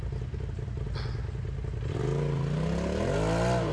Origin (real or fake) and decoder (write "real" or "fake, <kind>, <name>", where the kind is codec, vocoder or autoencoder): real